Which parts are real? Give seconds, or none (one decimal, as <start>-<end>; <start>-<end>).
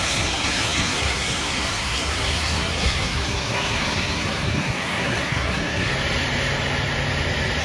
5.9-7.6